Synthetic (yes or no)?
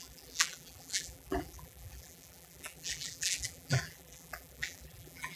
yes